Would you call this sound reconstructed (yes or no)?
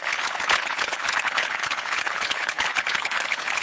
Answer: yes